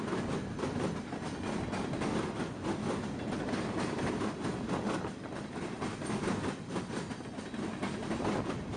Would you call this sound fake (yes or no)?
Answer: no